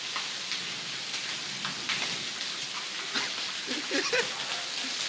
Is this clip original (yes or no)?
yes